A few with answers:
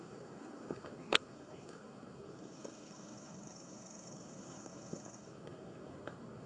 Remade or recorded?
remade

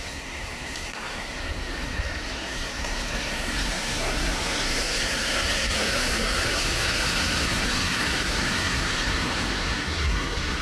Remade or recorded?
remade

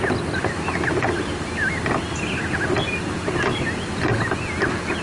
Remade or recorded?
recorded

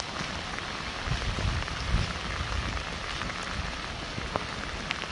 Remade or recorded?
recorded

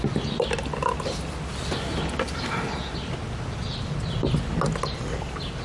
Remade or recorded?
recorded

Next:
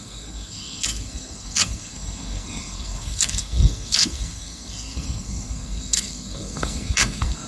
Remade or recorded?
remade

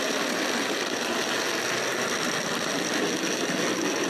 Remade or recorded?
recorded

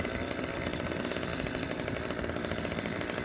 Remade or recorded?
recorded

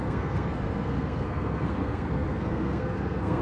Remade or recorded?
remade